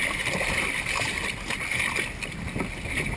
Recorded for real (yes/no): yes